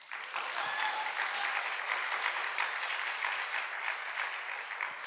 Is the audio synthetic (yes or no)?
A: no